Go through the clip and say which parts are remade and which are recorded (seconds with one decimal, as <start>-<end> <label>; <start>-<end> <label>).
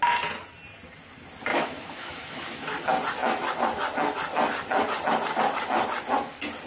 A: 0.0-1.5 recorded; 1.5-2.7 remade; 2.7-6.7 recorded